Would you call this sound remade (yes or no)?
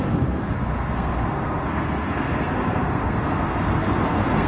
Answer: yes